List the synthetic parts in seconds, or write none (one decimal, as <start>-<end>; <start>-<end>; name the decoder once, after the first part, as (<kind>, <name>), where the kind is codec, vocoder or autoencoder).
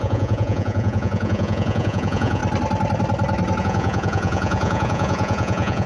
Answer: 0.0-2.4 (vocoder, Vocos); 3.6-5.9